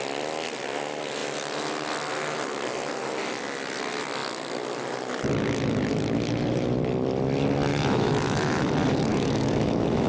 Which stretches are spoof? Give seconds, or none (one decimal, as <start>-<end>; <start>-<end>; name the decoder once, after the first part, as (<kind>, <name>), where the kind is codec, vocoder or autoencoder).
7.7-8.7 (autoencoder, DAC-VAE); 9.1-10.1